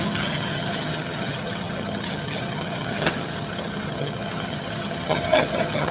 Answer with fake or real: fake